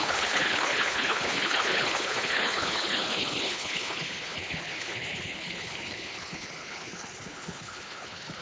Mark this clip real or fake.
fake